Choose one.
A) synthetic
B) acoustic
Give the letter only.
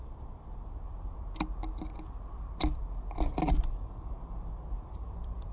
B